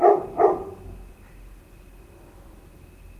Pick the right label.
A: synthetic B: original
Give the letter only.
B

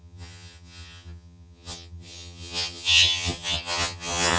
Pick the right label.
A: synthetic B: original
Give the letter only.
A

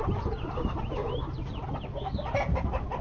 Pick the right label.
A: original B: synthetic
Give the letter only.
A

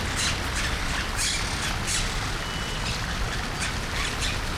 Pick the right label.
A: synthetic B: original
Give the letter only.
B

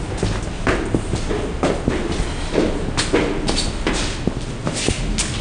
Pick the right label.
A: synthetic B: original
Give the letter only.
B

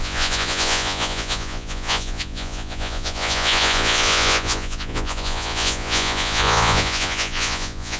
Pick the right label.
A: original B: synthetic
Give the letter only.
B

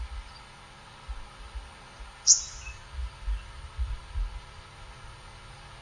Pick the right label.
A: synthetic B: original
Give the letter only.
B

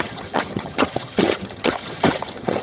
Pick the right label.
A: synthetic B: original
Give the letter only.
A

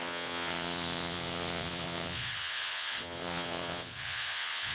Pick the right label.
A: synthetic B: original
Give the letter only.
A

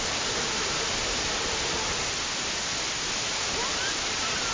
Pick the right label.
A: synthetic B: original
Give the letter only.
B